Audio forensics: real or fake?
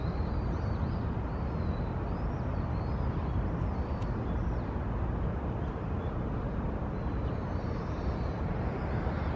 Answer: real